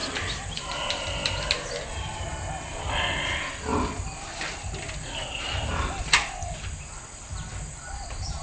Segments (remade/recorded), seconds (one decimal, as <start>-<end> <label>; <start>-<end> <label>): 0.0-8.4 recorded